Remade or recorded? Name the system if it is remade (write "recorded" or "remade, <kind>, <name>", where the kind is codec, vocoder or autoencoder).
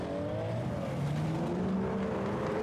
recorded